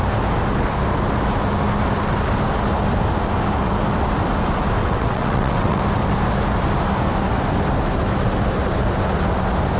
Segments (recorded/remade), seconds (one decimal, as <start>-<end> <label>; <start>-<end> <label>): 0.0-4.8 recorded; 4.8-5.8 remade; 5.8-9.8 recorded